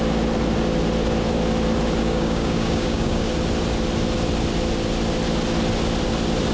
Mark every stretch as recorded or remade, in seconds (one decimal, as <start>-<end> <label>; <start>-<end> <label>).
0.0-2.0 recorded; 2.0-3.3 remade; 3.3-6.5 recorded